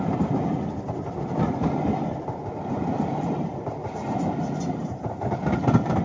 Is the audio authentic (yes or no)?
yes